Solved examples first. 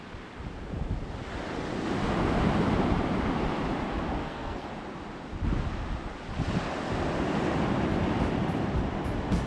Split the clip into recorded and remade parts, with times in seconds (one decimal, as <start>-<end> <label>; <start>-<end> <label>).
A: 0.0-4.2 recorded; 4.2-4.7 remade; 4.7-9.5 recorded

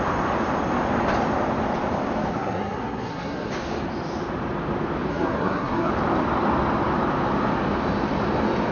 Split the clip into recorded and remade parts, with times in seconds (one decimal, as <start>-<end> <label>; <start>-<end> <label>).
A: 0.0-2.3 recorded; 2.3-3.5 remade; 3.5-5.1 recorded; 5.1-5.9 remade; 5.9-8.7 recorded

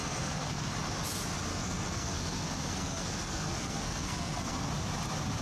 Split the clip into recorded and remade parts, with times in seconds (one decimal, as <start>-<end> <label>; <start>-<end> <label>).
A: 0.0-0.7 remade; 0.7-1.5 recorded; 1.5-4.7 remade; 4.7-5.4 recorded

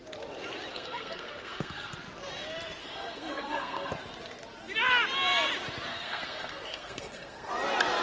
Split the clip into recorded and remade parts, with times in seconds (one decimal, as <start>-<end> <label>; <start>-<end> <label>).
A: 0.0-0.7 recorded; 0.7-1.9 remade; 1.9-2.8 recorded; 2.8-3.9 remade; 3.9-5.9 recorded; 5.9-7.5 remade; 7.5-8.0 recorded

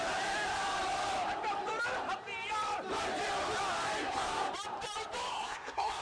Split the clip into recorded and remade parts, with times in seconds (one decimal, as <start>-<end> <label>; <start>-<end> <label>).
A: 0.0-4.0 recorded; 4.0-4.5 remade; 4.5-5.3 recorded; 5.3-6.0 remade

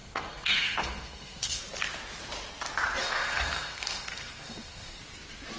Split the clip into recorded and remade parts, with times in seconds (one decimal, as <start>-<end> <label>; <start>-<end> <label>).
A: 0.0-1.6 remade; 1.6-3.0 recorded; 3.0-5.0 remade; 5.0-5.6 recorded